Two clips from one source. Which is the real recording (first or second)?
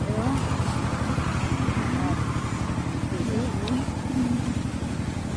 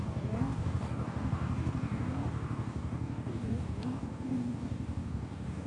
first